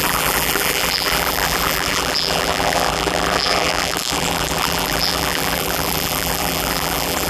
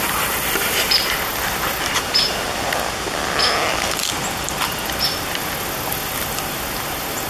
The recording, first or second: second